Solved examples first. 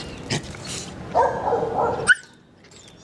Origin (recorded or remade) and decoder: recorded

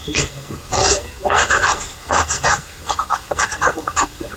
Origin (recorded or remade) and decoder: remade, codec, SNAC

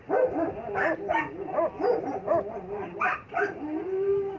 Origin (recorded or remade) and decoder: recorded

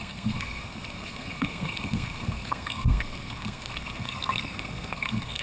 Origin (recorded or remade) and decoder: remade, codec, SNAC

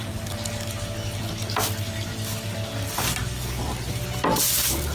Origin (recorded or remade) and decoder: recorded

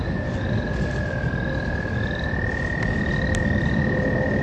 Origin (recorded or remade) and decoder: recorded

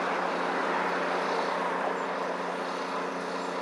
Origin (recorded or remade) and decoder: recorded